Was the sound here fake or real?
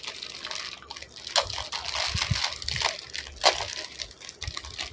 real